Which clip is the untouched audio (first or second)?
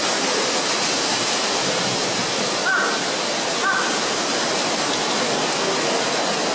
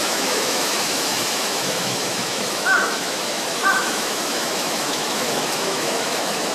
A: first